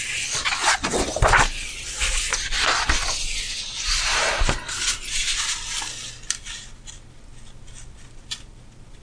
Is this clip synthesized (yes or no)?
no